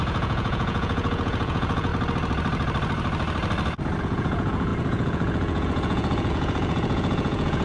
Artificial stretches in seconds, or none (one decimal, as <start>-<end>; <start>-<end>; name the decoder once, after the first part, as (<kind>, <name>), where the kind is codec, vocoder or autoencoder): 0.0-1.9 (vocoder, Vocos); 4.0-7.6